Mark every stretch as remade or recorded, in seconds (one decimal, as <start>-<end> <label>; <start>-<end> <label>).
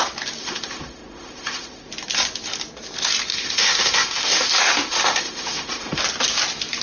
0.0-0.4 recorded; 0.4-1.9 remade; 1.9-3.3 recorded; 3.3-6.0 remade; 6.0-6.8 recorded